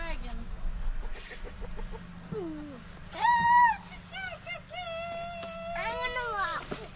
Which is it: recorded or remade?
recorded